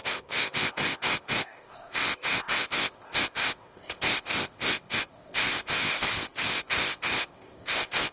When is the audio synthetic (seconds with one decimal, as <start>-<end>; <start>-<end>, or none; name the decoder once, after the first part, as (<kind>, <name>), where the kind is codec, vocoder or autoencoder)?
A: 0.0-8.1 (codec, ZipCodec)